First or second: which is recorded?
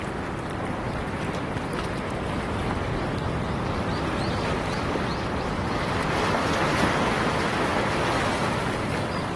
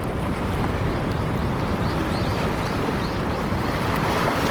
first